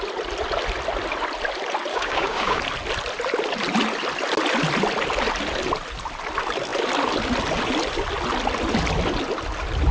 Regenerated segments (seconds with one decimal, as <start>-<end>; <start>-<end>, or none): 1.9-2.6